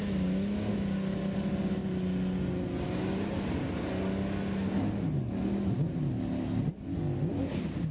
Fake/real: real